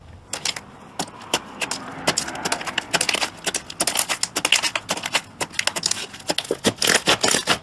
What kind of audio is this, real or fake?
real